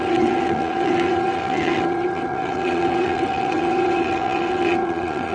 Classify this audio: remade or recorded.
remade